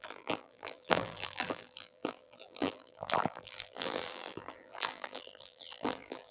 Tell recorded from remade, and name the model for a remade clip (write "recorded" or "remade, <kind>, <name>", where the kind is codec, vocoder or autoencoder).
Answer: remade, vocoder, BigVGAN v2